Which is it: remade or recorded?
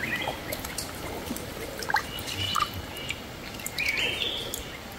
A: recorded